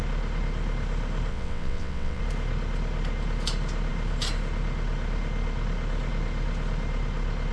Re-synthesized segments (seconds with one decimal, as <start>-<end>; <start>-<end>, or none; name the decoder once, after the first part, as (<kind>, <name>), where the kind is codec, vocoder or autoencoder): 1.3-2.2 (vocoder, WaveNeXt)